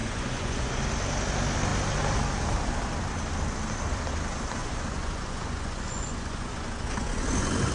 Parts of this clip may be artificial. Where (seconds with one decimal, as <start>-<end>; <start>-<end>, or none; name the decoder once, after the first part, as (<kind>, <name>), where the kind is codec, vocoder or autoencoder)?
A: 0.0-0.8 (vocoder, Vocos); 4.6-7.7